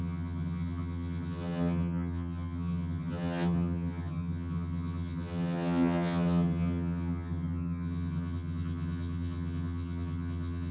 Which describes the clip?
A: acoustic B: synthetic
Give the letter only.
B